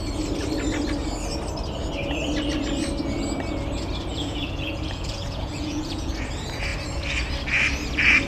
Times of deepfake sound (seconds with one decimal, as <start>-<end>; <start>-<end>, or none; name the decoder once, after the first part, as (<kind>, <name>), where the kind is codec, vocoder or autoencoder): 4.1-6.1 (vocoder, Vocos)